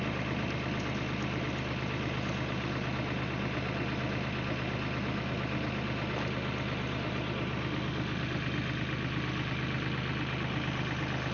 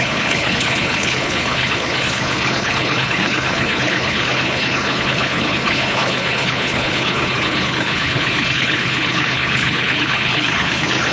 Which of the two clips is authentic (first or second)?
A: first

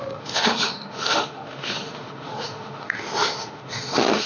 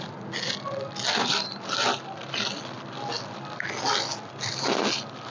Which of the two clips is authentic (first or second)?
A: second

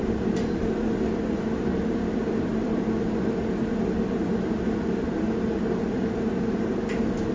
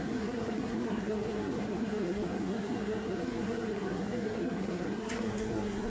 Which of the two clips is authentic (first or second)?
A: first